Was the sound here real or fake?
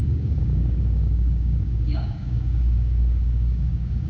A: fake